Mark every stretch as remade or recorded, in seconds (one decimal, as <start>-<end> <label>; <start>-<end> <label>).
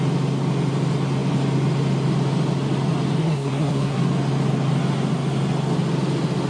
0.0-3.2 recorded; 3.2-4.0 remade; 4.0-6.5 recorded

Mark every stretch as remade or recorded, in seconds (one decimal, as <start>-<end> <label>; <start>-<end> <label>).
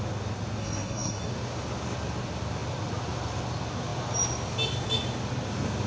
0.0-0.6 recorded; 0.6-1.3 remade; 1.3-5.9 recorded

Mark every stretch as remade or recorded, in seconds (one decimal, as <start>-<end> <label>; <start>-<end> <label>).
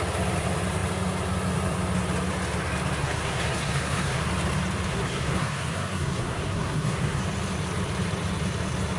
0.0-3.0 recorded; 3.0-4.3 remade; 4.3-4.9 recorded; 4.9-7.2 remade; 7.2-9.0 recorded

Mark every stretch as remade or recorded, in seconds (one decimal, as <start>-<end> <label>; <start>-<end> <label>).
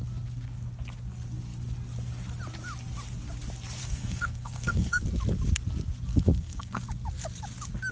0.0-3.8 recorded; 3.8-5.0 remade; 5.0-6.1 recorded; 6.1-6.8 remade; 6.8-7.9 recorded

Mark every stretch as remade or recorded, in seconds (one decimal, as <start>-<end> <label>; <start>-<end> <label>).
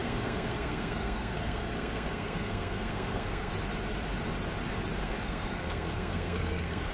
0.0-3.5 remade; 3.5-5.0 recorded; 5.0-6.9 remade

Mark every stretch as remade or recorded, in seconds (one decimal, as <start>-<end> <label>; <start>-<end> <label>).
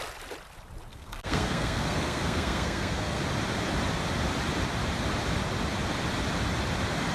0.0-0.9 recorded; 0.9-3.2 remade; 3.2-7.1 recorded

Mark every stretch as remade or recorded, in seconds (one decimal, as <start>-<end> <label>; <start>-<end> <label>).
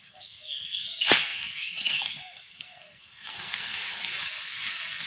0.0-5.1 remade